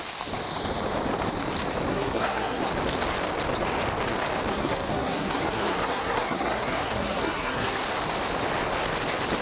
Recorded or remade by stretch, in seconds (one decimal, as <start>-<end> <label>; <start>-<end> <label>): 0.0-1.9 recorded; 1.9-2.6 remade; 2.6-4.5 recorded; 4.5-7.8 remade; 7.8-9.4 recorded